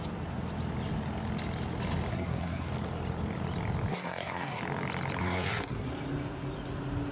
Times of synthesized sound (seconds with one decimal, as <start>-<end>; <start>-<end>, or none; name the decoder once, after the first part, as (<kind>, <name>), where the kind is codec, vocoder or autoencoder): 2.1-2.7 (codec, SNAC); 3.9-4.6; 5.2-5.9